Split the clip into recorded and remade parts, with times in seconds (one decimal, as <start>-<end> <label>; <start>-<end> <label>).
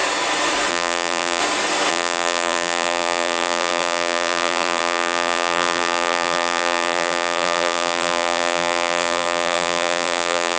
0.0-0.7 recorded; 0.7-1.4 remade; 1.4-1.9 recorded; 1.9-10.6 remade